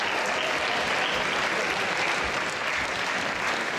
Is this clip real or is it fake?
real